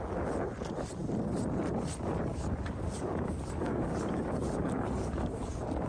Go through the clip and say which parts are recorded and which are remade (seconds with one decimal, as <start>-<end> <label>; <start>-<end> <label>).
0.0-2.3 recorded; 2.3-5.9 remade